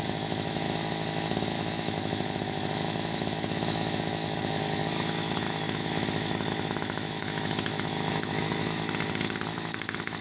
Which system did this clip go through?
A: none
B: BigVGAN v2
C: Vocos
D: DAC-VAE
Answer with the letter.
D